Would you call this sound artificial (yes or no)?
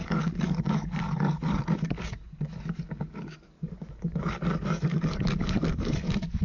yes